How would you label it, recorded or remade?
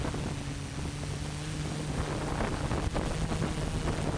recorded